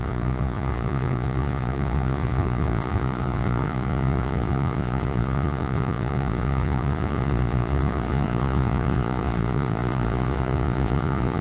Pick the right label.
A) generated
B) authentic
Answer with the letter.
A